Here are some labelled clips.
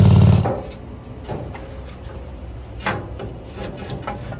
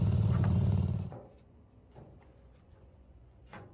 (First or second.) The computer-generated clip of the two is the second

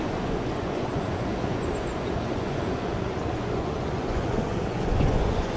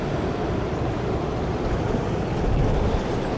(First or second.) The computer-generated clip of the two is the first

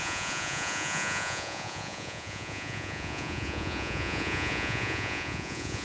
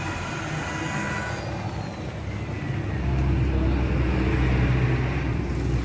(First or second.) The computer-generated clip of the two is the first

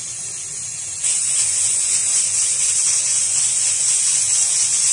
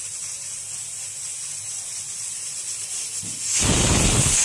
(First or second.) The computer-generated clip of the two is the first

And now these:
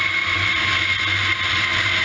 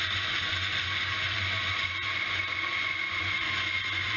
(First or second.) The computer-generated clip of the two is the second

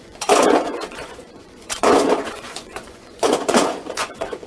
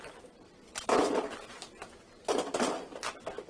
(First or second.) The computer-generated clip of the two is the first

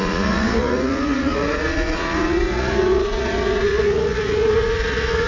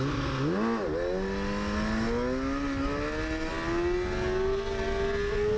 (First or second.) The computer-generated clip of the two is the first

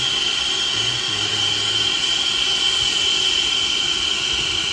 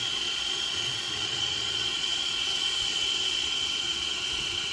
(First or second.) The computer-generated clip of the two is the second